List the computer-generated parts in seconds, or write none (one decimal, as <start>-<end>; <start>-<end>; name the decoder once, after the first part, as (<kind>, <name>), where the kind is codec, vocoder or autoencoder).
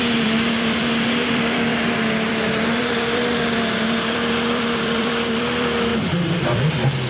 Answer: 0.0-5.9 (vocoder, BigVGAN v2)